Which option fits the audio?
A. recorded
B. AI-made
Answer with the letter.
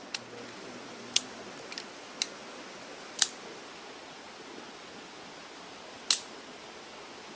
A